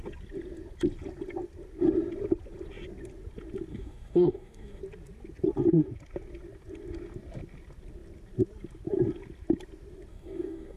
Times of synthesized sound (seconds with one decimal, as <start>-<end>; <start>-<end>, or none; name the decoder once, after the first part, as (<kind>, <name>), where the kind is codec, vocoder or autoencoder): 3.7-4.8 (codec, DAC); 10.1-10.8